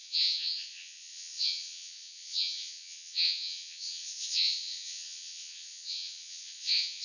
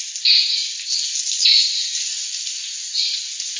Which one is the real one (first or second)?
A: second